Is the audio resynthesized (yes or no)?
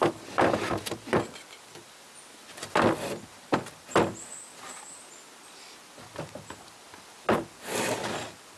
no